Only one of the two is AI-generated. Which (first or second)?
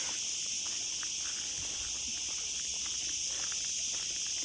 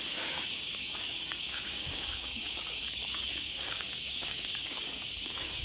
second